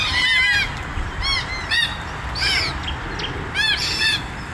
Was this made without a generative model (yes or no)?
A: yes